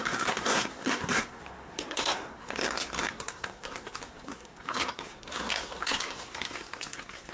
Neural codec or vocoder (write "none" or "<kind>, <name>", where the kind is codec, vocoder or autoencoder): codec, SNAC